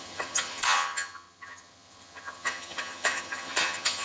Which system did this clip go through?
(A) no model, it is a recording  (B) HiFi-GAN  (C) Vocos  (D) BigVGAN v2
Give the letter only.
B